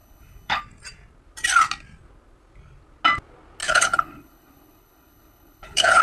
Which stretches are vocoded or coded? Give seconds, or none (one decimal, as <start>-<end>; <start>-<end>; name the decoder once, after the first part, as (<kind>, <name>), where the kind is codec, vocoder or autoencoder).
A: 0.0-0.6 (codec, HILCodec); 3.6-6.0